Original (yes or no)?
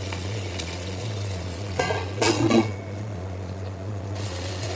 no